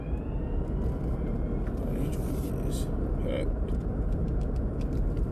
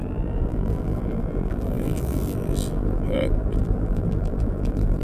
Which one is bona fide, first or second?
first